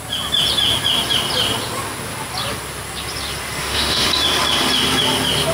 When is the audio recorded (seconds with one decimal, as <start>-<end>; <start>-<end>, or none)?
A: 0.0-3.6; 4.1-5.5